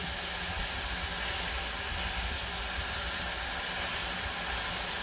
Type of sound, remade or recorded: recorded